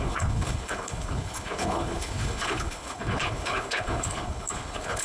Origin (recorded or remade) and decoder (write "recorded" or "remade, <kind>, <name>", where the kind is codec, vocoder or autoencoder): remade, codec, HILCodec